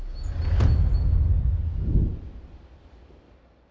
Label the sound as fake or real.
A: real